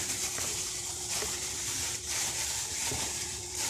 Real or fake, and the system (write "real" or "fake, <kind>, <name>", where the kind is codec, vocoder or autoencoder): fake, vocoder, BigVGAN v2